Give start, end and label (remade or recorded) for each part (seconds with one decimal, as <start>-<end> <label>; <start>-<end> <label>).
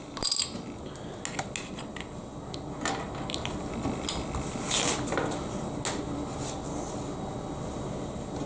0.0-8.5 recorded